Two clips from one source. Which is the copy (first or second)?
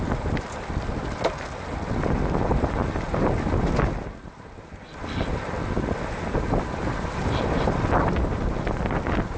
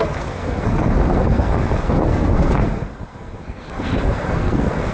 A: second